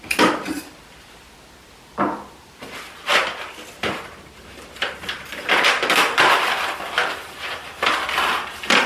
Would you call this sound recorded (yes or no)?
no